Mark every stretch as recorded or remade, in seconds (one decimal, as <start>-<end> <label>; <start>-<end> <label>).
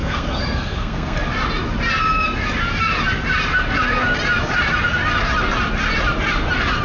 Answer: 0.0-1.2 remade; 1.2-6.8 recorded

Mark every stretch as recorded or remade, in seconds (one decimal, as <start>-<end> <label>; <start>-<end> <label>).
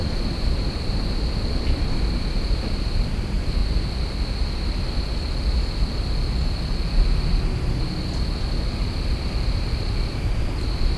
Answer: 0.0-3.6 remade; 3.6-8.7 recorded; 8.7-11.0 remade